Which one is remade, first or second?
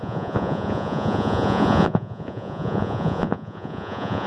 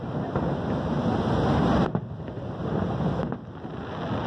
first